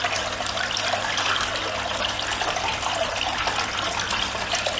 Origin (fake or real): real